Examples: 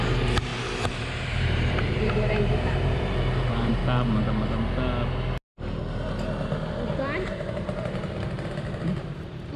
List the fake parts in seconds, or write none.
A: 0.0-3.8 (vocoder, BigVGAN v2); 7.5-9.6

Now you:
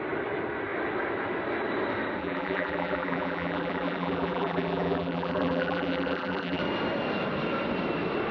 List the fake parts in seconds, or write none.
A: 2.2-6.6 (vocoder, BigVGAN v2)

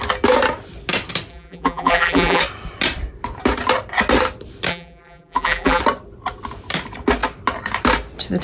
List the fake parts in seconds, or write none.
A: 1.3-2.4 (vocoder, BigVGAN v2); 4.7-5.8

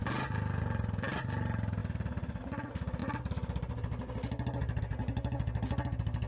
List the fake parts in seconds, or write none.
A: 1.8-2.4 (vocoder, BigVGAN v2)